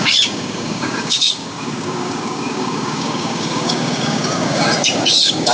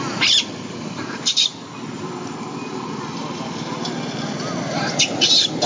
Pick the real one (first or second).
second